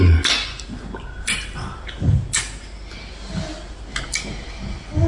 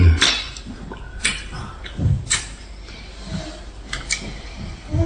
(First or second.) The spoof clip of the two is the second